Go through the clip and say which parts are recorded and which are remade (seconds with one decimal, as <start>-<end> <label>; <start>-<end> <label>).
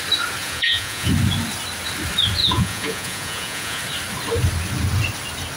0.0-0.4 recorded; 0.4-1.1 remade; 1.1-2.4 recorded; 2.4-3.8 remade; 3.8-5.6 recorded